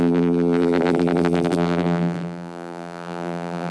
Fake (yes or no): yes